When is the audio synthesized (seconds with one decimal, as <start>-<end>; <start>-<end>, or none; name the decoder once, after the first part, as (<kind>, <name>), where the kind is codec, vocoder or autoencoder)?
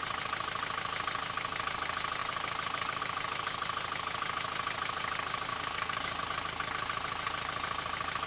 5.5-6.2 (codec, DAC)